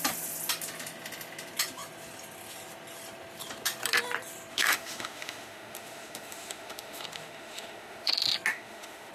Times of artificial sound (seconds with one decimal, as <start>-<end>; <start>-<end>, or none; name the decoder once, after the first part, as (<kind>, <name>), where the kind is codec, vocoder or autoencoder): 4.5-8.1 (autoencoder, DAC-VAE); 8.5-9.1